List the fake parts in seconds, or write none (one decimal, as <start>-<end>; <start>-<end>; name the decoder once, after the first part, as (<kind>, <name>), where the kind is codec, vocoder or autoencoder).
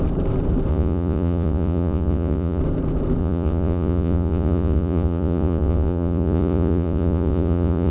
0.7-2.6 (vocoder, Vocos); 3.2-7.9